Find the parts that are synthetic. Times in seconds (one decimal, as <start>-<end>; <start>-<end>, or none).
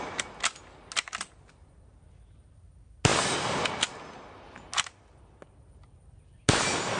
3.1-3.8